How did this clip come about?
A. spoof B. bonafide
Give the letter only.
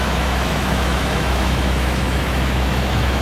A